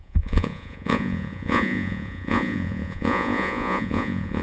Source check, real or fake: fake